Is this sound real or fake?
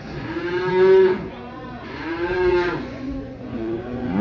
fake